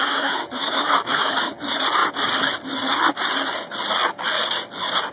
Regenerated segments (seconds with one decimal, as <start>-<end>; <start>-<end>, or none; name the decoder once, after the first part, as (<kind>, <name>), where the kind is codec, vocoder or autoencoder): 0.0-1.5 (autoencoder, DAC-VAE)